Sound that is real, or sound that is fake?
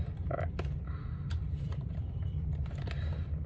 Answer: fake